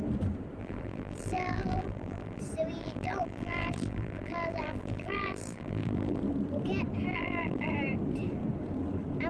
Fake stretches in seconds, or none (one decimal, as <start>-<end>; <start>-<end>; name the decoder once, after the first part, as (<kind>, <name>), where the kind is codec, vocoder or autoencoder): 0.6-2.4 (vocoder, BigVGAN v2); 2.8-6.2; 7.1-7.7